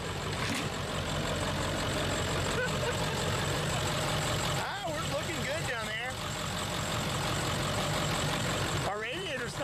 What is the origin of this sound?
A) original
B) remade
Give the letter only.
B